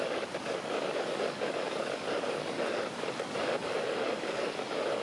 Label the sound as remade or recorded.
remade